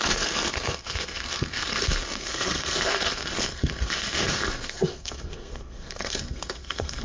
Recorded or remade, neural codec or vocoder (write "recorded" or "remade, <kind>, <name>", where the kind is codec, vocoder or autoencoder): remade, codec, SNAC